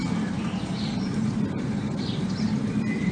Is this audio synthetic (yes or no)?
no